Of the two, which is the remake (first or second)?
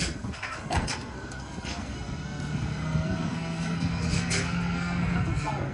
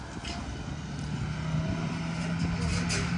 first